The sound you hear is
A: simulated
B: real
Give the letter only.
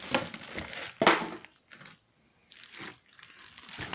B